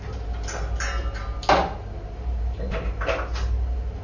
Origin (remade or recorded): recorded